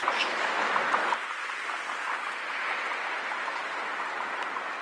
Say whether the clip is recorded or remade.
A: recorded